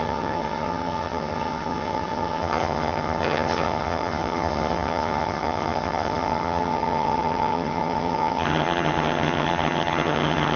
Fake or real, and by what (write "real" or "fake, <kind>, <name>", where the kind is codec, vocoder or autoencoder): fake, vocoder, HiFi-GAN